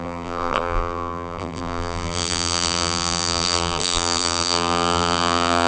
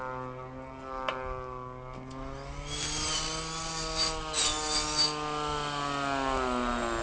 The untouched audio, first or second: second